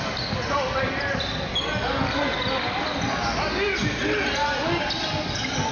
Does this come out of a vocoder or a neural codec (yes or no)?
no